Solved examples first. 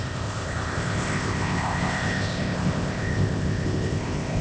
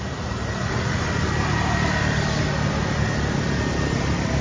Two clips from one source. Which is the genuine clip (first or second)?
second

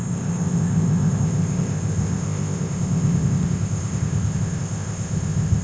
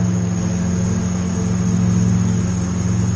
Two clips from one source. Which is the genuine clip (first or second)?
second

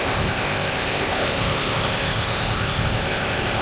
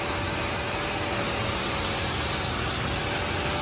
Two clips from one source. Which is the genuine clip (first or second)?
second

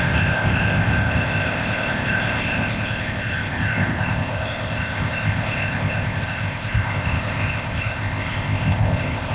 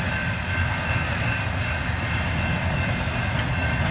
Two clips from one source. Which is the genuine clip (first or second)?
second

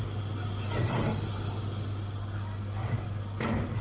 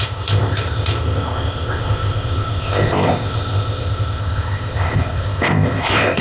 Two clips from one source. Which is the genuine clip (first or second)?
first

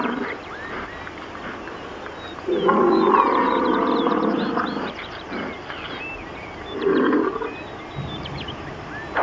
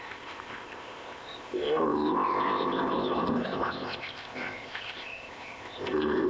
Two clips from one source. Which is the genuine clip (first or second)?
first